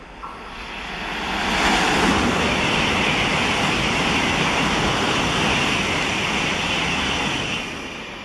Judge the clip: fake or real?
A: real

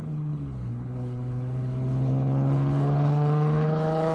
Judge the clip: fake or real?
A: fake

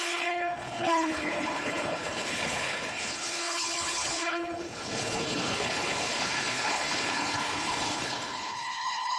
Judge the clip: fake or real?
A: fake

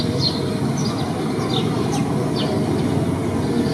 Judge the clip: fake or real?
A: real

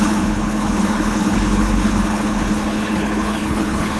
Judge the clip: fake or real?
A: fake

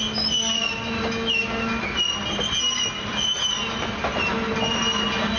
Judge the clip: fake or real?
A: real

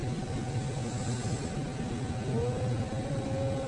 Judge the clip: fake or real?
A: real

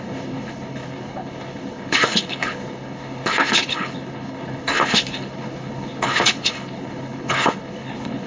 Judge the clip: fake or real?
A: fake